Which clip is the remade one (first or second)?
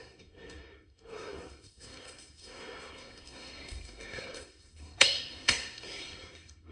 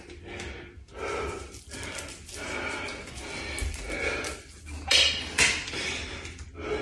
first